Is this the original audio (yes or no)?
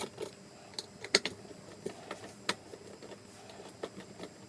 yes